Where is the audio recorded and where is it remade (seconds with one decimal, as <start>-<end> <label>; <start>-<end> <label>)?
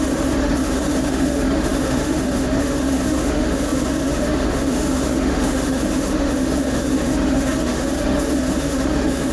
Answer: 0.0-9.3 remade